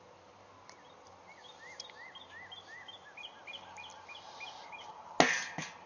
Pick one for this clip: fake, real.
real